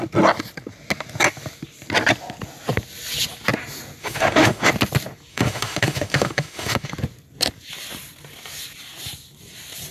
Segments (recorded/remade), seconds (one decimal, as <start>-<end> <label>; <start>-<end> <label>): 0.0-4.0 recorded; 4.0-4.7 remade; 4.7-5.3 recorded; 5.3-6.9 remade; 6.9-9.9 recorded